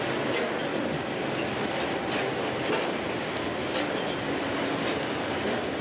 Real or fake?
real